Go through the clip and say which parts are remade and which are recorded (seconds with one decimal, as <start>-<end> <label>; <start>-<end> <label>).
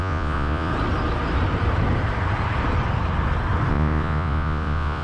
0.0-0.7 remade; 0.7-3.7 recorded; 3.7-5.0 remade